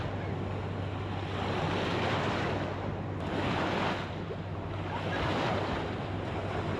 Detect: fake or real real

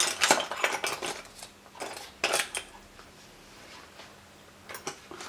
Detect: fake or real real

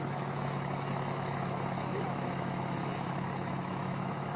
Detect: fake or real fake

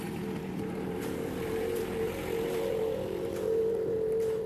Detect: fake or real fake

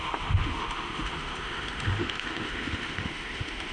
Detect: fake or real fake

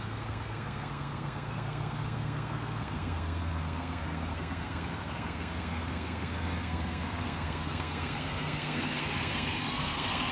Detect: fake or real fake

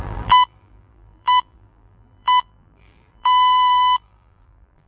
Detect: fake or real fake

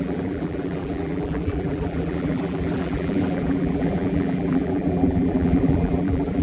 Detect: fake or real fake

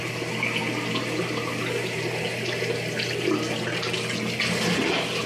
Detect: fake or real real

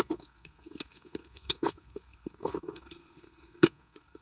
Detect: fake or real fake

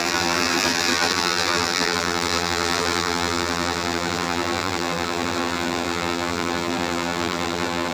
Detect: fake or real fake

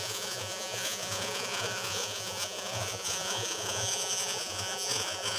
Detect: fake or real fake